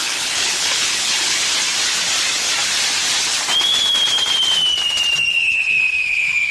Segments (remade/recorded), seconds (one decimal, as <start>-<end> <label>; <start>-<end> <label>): 0.0-1.4 remade; 1.4-5.3 recorded; 5.3-6.5 remade